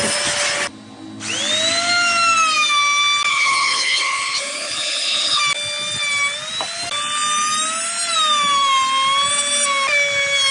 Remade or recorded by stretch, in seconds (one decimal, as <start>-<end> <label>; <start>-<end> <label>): 0.0-3.3 recorded; 3.3-5.4 remade; 5.4-10.5 recorded